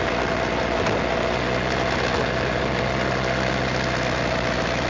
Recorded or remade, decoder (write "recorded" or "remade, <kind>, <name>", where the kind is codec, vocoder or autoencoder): recorded